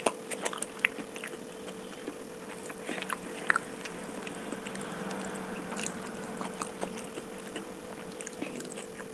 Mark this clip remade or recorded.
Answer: recorded